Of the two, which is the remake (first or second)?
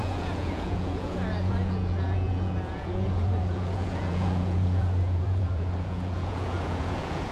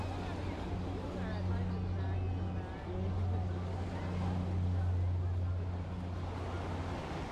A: first